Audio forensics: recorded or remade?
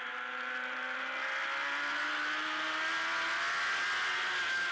recorded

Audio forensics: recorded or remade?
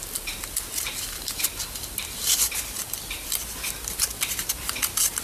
recorded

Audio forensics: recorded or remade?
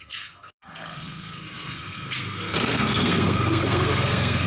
remade